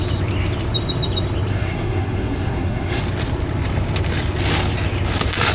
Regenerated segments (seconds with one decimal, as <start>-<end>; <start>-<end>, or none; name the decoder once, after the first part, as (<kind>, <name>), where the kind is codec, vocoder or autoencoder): 1.5-3.0 (codec, SNAC)